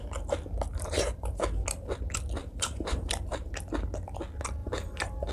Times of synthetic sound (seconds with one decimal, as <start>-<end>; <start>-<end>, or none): 0.7-1.4; 2.4-3.5; 4.6-5.3